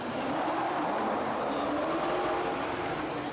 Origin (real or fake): real